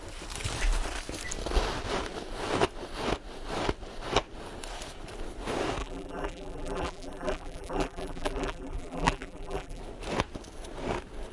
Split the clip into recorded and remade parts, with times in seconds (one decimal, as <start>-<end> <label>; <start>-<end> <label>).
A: 0.0-5.8 recorded; 5.8-9.8 remade; 9.8-11.3 recorded